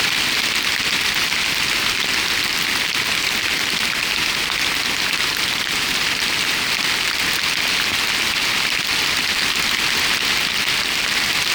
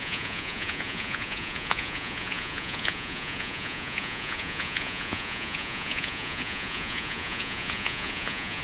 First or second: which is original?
first